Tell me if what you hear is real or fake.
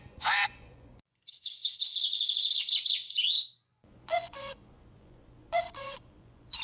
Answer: fake